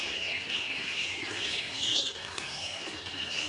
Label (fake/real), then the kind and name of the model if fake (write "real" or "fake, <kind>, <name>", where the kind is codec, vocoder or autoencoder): fake, codec, SNAC